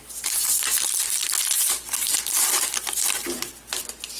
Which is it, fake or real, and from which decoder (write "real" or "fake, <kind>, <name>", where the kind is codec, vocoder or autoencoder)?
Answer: real